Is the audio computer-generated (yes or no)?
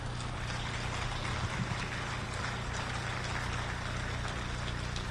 no